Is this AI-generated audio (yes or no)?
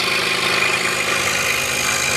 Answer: no